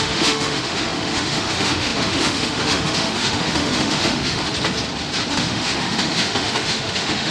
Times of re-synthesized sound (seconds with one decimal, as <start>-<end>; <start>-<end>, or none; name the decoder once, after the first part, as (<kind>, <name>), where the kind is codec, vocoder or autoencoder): 0.0-4.4 (autoencoder, DAC-VAE); 5.3-7.3